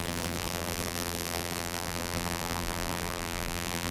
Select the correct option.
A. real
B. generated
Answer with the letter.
B